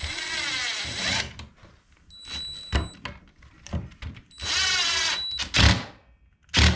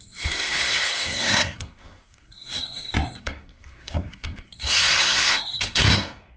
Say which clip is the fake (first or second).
second